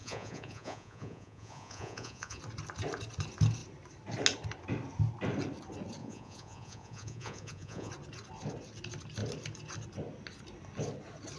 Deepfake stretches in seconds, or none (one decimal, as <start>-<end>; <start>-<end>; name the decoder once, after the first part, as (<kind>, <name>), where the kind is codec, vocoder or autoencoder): 0.0-2.4 (vocoder, Vocos); 6.0-7.9